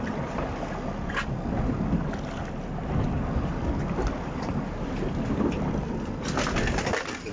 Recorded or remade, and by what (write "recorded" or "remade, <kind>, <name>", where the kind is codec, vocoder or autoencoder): recorded